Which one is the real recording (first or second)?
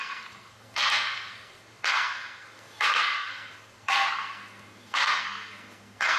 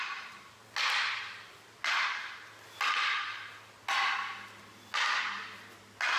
second